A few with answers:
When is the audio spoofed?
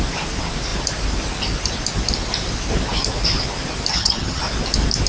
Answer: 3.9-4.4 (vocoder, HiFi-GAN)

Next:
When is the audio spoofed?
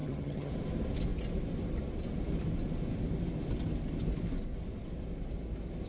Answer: 0.0-0.5 (vocoder, HiFi-GAN)